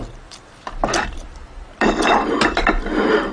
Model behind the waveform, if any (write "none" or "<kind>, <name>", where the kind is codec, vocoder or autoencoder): vocoder, BigVGAN v2